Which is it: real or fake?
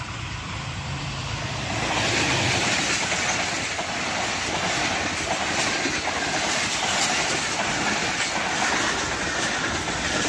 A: fake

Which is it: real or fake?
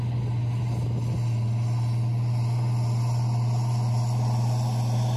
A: real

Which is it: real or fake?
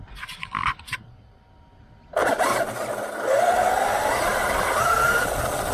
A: real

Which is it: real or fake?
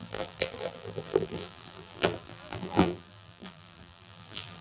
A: fake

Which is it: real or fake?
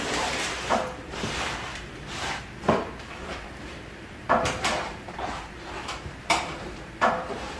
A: fake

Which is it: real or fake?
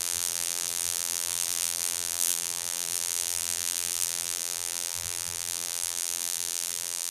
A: fake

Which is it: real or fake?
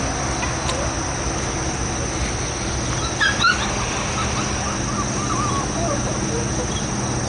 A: real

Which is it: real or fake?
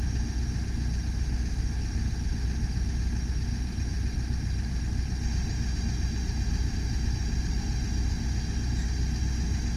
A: real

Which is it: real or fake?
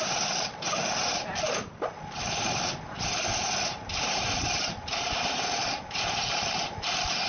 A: fake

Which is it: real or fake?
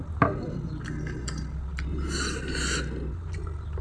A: real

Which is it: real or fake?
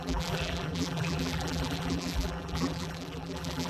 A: fake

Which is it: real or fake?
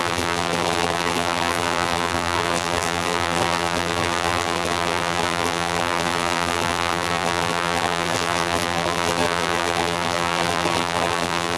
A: fake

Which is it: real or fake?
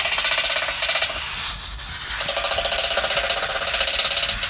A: fake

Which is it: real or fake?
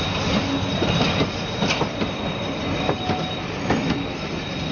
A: real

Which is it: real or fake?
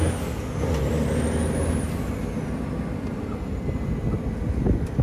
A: real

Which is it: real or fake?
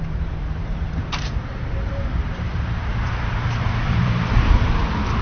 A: fake